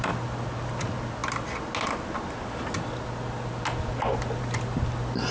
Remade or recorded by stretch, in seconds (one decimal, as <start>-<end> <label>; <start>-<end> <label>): 0.0-5.3 recorded